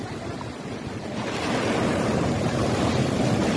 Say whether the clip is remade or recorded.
remade